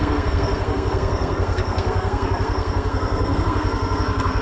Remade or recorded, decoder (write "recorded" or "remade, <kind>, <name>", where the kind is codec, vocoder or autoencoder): remade, codec, SNAC